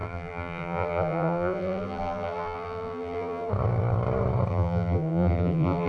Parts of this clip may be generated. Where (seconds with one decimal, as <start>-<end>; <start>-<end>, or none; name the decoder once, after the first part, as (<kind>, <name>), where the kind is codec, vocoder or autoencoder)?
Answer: 0.0-3.5 (vocoder, BigVGAN v2); 4.5-5.9